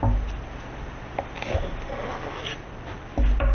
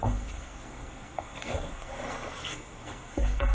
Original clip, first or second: first